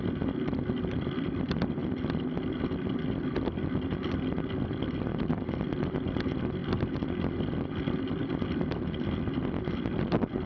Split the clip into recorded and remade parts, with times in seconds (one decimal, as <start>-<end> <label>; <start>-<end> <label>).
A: 0.0-10.5 recorded